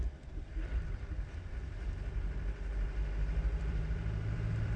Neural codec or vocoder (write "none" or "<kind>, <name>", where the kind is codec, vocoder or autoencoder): vocoder, BigVGAN v2